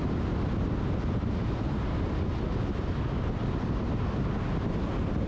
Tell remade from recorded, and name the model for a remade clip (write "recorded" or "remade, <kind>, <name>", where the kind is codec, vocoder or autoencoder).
recorded